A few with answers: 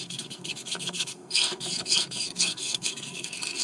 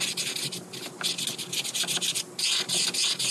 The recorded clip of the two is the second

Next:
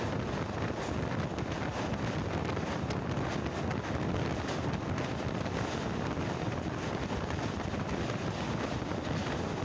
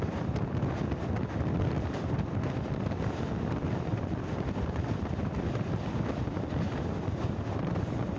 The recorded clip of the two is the first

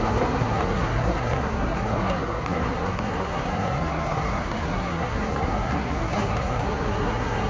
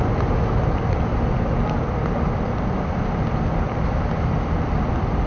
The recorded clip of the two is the second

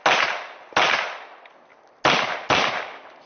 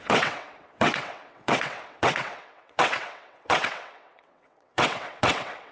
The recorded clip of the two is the first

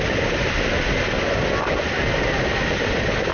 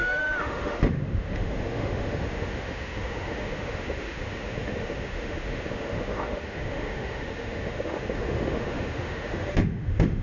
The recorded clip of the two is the first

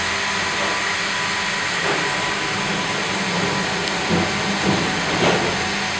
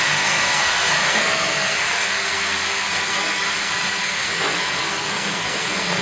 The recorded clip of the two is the first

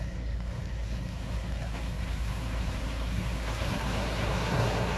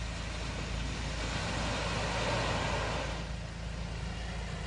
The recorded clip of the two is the second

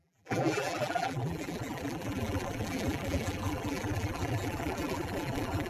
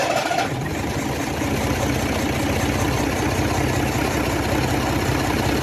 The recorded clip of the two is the second